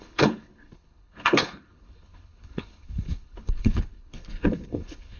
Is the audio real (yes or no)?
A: no